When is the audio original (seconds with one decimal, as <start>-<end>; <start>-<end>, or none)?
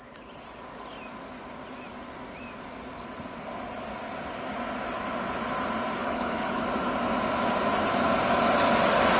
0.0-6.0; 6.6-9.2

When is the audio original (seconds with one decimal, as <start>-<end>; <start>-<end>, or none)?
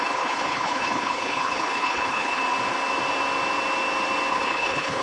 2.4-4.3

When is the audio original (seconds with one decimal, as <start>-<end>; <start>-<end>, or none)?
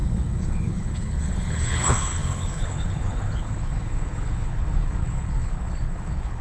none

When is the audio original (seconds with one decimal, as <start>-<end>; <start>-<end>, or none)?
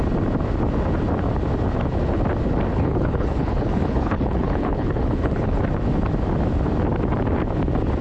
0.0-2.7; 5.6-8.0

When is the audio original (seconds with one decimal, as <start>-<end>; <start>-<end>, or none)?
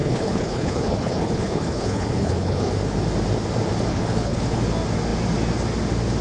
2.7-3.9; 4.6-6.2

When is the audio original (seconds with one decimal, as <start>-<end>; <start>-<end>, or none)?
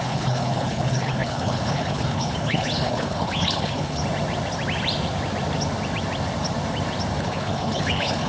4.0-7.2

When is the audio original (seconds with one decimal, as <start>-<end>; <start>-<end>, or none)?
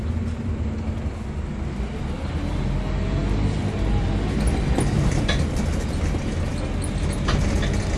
0.0-8.0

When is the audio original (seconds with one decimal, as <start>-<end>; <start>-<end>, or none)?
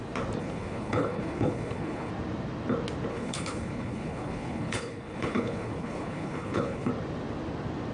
0.0-0.4; 2.1-3.1; 6.9-7.9